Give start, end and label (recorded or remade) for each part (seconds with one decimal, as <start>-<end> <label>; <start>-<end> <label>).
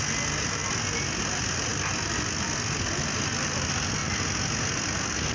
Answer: 0.0-5.3 recorded